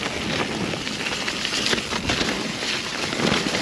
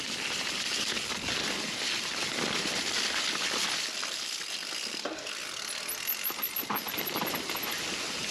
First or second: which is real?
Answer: first